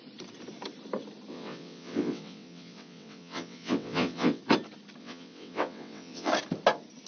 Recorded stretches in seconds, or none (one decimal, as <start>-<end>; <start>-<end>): 0.0-1.3; 4.4-5.0; 6.3-7.1